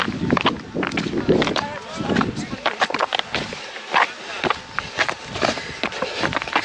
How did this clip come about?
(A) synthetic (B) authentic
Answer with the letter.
B